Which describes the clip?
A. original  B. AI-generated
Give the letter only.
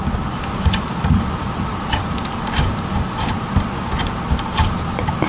A